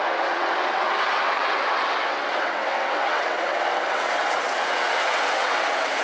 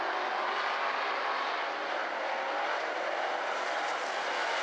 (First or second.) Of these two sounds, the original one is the second